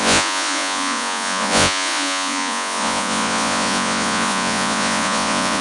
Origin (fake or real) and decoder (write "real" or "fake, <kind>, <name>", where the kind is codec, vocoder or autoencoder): fake, vocoder, Vocos